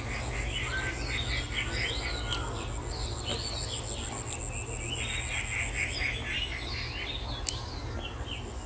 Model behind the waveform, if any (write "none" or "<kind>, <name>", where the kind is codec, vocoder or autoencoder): none